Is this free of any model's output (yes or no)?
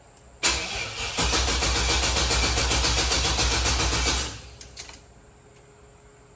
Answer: yes